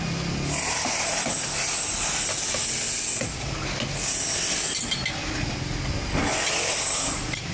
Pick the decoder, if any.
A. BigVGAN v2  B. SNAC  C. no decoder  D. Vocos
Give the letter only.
C